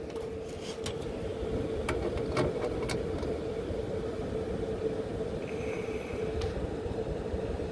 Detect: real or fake real